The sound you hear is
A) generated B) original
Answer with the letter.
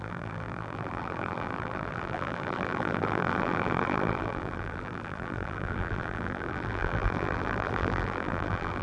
A